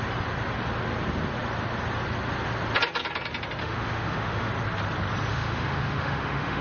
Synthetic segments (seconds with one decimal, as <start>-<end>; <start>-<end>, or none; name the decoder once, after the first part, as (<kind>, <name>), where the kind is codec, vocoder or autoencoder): 3.6-4.5 (autoencoder, DAC-VAE); 5.3-6.6